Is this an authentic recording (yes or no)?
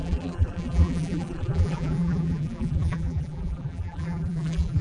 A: no